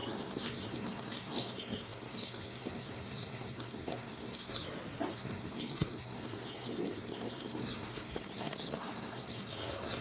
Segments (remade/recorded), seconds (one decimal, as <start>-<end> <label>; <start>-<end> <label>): 0.0-4.6 remade; 4.6-5.1 recorded; 5.1-10.0 remade

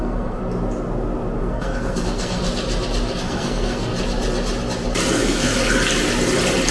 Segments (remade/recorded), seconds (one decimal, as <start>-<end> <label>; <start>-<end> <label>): 0.0-0.4 remade; 0.4-1.4 recorded; 1.4-2.4 remade; 2.4-3.2 recorded; 3.2-3.9 remade; 3.9-5.1 recorded; 5.1-5.5 remade; 5.5-6.7 recorded

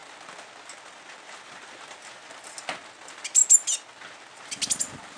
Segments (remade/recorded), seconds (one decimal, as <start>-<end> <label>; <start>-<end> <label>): 0.0-5.2 recorded

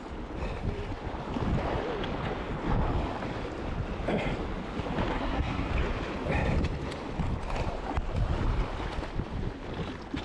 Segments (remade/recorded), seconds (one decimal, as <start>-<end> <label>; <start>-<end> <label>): 0.0-5.1 recorded; 5.1-5.7 remade; 5.7-10.2 recorded

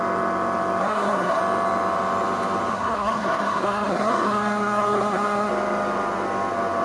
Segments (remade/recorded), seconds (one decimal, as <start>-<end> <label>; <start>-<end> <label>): 0.0-0.8 recorded; 0.8-1.4 remade; 1.4-2.7 recorded; 2.7-5.5 remade; 5.5-6.8 recorded